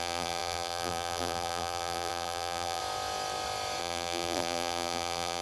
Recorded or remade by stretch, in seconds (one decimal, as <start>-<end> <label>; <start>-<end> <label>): 0.0-2.8 remade; 2.8-3.8 recorded; 3.8-5.4 remade